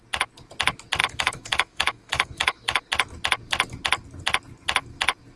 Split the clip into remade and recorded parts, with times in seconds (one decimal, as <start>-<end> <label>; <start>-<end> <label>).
0.0-1.0 recorded; 1.0-2.8 remade; 2.8-5.4 recorded

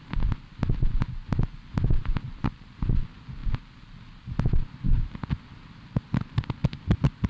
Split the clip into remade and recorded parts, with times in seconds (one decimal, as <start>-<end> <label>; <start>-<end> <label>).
0.0-7.3 recorded

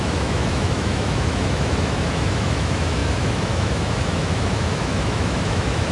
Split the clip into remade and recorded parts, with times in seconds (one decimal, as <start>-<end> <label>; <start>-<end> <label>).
0.0-5.9 remade

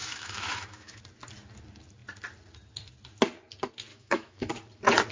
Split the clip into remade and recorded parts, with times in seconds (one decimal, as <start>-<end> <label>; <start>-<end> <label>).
0.0-1.0 remade; 1.0-3.9 recorded; 3.9-4.5 remade; 4.5-5.1 recorded

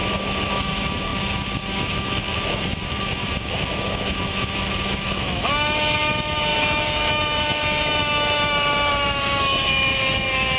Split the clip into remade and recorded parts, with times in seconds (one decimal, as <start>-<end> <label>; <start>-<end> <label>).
0.0-0.5 recorded; 0.5-10.6 remade

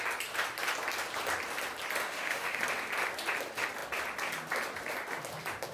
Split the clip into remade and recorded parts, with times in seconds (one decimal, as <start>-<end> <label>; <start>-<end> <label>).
0.0-2.0 recorded; 2.0-2.6 remade; 2.6-5.7 recorded

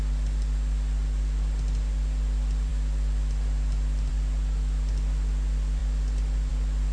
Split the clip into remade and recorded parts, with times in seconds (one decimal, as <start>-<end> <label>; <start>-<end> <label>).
0.0-6.9 recorded

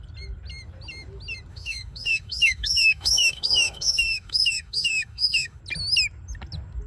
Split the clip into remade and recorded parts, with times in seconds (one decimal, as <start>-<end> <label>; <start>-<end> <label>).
0.0-1.5 recorded; 1.5-5.6 remade; 5.6-6.9 recorded